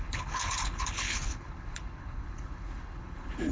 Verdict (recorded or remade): remade